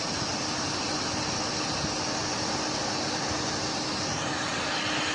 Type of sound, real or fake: real